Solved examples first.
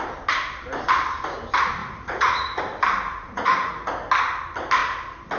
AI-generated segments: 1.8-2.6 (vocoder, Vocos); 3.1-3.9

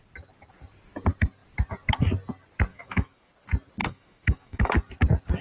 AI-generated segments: 2.7-3.3 (autoencoder, DAC-VAE); 3.8-4.7

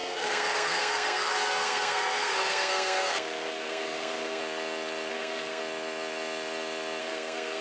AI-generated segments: 0.0-4.4 (codec, SNAC); 5.1-5.6; 7.0-7.6

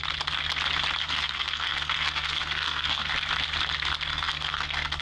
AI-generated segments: 1.0-3.1 (codec, SNAC); 4.1-5.0

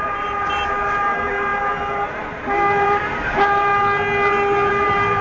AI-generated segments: 0.0-1.5 (vocoder, BigVGAN v2); 2.2-3.7; 4.7-5.2

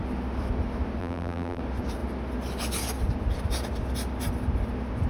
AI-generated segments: 1.0-1.6 (vocoder, BigVGAN v2)

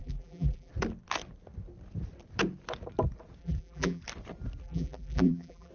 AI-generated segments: 0.0-0.7 (vocoder, BigVGAN v2); 3.4-4.0; 4.6-5.7